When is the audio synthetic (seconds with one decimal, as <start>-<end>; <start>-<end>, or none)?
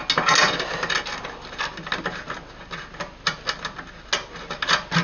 none